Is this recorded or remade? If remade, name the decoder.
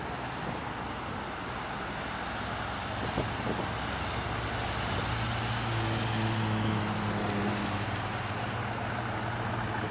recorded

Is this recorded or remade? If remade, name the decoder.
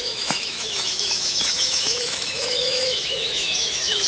remade, autoencoder, DAC-VAE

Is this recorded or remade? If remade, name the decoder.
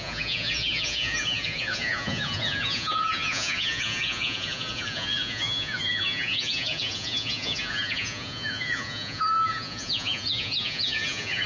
remade, vocoder, Vocos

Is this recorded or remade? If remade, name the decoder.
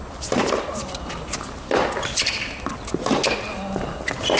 recorded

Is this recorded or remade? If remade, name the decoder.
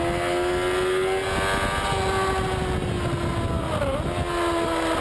recorded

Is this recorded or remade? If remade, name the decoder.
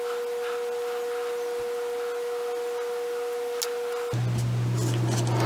recorded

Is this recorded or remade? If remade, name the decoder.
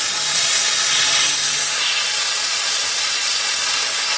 recorded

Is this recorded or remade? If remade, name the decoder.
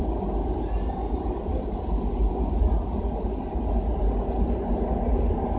recorded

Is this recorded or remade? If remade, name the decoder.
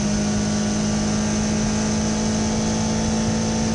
recorded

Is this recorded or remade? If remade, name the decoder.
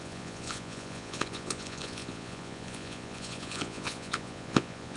remade, vocoder, Vocos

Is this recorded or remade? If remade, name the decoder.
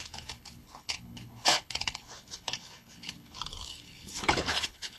remade, codec, HILCodec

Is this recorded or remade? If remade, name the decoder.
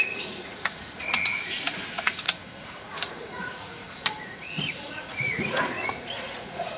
remade, vocoder, Vocos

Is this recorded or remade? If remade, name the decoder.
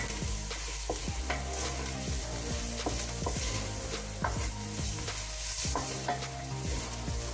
recorded